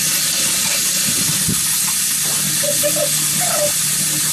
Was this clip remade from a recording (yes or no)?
no